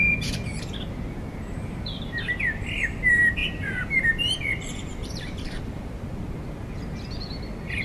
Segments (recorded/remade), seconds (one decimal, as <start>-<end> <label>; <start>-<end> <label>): 0.0-3.4 recorded; 3.4-6.0 remade; 6.0-7.8 recorded